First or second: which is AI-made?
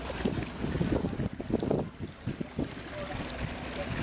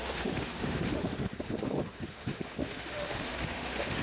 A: second